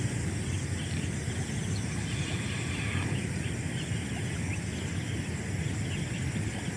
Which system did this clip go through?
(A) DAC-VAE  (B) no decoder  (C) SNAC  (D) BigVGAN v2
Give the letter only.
B